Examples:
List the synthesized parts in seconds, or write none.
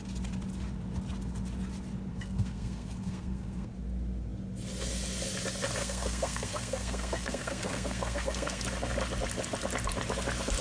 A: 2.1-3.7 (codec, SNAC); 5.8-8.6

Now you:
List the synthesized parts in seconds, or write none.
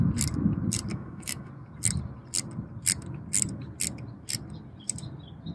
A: 0.9-1.5 (autoencoder, DAC-VAE)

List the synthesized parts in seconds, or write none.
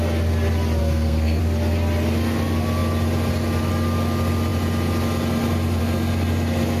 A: 0.8-1.4 (codec, SNAC)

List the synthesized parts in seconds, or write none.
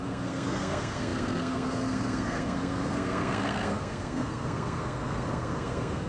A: 0.0-6.1 (codec, SNAC)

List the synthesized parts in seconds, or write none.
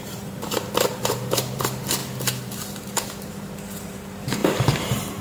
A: 0.0-2.0 (vocoder, BigVGAN v2); 3.2-5.2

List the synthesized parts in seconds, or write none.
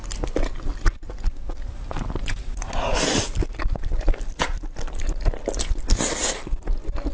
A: 2.9-5.8 (vocoder, BigVGAN v2); 6.2-7.1